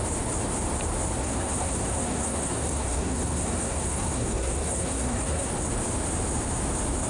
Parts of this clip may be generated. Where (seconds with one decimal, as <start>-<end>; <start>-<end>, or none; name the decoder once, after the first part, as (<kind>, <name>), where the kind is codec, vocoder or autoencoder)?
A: 1.2-5.5 (codec, SNAC)